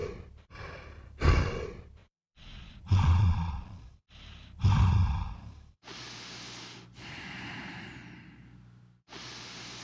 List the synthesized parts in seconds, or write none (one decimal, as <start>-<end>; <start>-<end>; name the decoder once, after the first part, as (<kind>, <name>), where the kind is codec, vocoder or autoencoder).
2.0-3.9 (vocoder, Vocos)